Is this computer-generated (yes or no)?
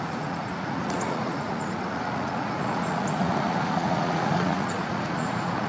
yes